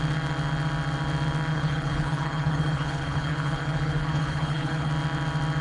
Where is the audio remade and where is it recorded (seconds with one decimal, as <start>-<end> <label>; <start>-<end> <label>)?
0.0-1.5 recorded; 1.5-4.9 remade; 4.9-5.6 recorded